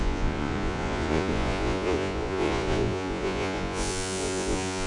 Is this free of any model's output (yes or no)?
no